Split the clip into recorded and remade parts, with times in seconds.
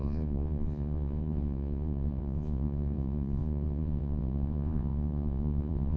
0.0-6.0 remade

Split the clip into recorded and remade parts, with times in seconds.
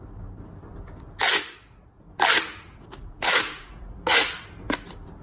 0.0-1.4 recorded; 1.4-2.1 remade; 2.1-2.5 recorded; 2.5-4.4 remade; 4.4-5.2 recorded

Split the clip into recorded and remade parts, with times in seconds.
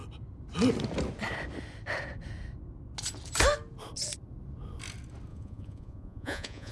0.0-5.3 recorded; 5.3-6.7 remade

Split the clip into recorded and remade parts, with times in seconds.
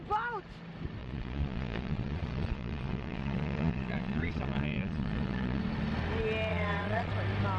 0.0-1.0 recorded; 1.0-5.6 remade; 5.6-6.5 recorded; 6.5-7.1 remade; 7.1-7.6 recorded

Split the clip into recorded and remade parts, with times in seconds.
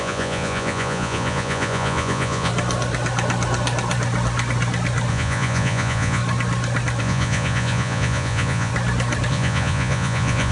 0.0-2.5 remade; 2.5-5.1 recorded; 5.1-6.2 remade; 6.2-7.0 recorded; 7.0-8.7 remade; 8.7-9.3 recorded; 9.3-10.5 remade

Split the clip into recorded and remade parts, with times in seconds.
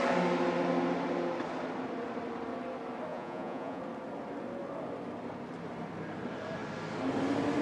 0.0-3.1 recorded; 3.1-3.8 remade; 3.8-7.6 recorded